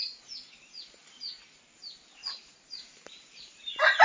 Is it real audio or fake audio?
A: real